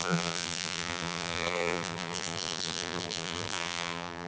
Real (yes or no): no